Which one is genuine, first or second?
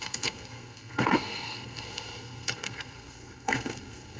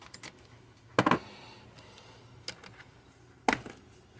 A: second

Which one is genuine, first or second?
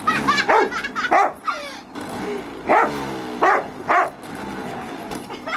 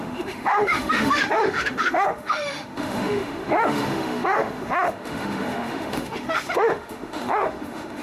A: first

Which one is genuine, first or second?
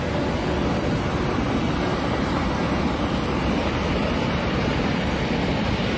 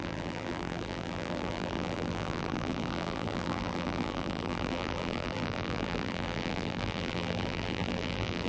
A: first